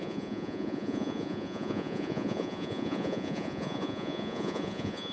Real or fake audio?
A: fake